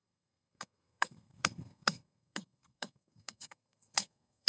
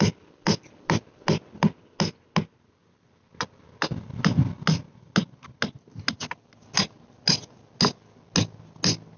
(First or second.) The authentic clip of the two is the second